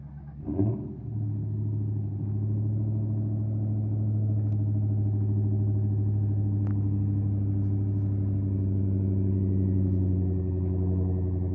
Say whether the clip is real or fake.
real